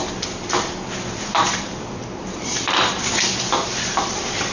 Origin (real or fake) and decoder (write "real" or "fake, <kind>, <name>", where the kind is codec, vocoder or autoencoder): fake, vocoder, BigVGAN v2